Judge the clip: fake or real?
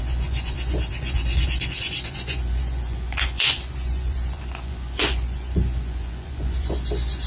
fake